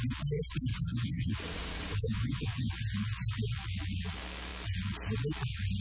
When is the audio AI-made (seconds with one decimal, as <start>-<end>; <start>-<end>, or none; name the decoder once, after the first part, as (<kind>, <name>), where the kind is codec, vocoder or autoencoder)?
0.7-2.7 (vocoder, WaveNeXt)